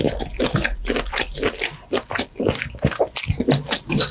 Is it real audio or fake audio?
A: real